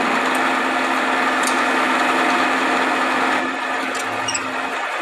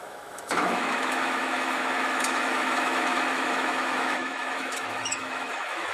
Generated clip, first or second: second